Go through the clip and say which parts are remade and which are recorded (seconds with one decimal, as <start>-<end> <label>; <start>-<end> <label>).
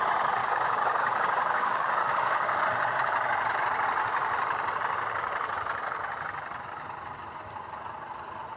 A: 0.0-0.4 recorded; 0.4-2.6 remade; 2.6-8.6 recorded